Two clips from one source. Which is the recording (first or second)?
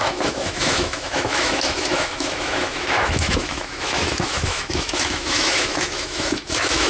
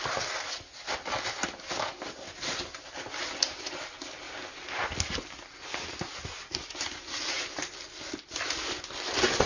second